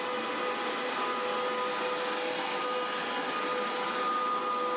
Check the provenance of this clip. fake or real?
real